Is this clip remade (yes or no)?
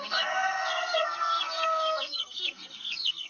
yes